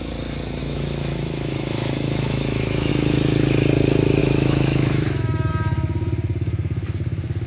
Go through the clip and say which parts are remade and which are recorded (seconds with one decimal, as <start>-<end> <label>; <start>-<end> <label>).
0.0-0.6 recorded; 0.6-2.9 remade; 2.9-4.2 recorded; 4.2-5.5 remade; 5.5-7.5 recorded

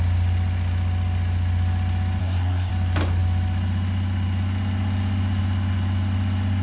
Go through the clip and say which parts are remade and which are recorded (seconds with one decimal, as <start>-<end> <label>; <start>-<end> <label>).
0.0-2.2 recorded; 2.2-2.7 remade; 2.7-6.6 recorded

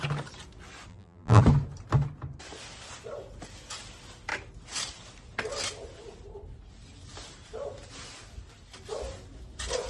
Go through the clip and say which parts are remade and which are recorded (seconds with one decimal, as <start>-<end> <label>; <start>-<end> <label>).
0.0-0.9 recorded; 0.9-1.4 remade; 1.4-9.9 recorded

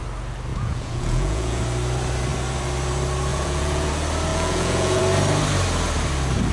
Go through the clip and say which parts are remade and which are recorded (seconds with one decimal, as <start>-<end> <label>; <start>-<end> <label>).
0.0-0.5 recorded; 0.5-1.6 remade; 1.6-3.3 recorded; 3.3-3.9 remade; 3.9-4.3 recorded; 4.3-5.0 remade; 5.0-6.5 recorded

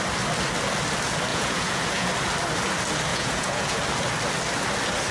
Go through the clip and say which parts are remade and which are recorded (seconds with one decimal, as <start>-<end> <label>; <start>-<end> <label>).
0.0-1.3 recorded; 1.3-2.1 remade; 2.1-3.1 recorded; 3.1-3.8 remade; 3.8-5.1 recorded

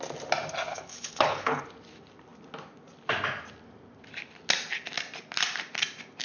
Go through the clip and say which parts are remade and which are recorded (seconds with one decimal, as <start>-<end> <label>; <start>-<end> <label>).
0.0-0.7 recorded; 0.7-1.6 remade; 1.6-6.2 recorded